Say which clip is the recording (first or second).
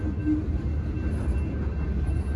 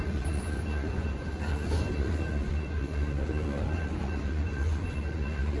first